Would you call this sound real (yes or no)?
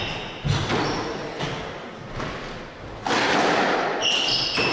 yes